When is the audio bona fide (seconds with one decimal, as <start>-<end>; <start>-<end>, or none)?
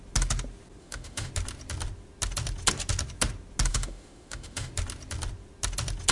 0.0-0.8; 1.3-3.7; 4.7-6.1